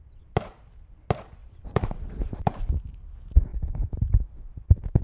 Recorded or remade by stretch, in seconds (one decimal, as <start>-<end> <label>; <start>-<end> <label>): 0.0-1.4 recorded; 1.4-2.6 remade; 2.6-5.0 recorded